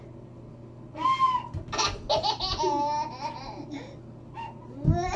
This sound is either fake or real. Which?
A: real